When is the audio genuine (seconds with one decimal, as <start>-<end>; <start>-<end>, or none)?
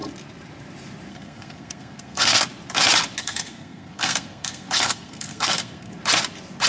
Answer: 0.0-1.1; 2.4-3.2; 5.9-6.7